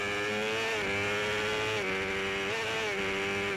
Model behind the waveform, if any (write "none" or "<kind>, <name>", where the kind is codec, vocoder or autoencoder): none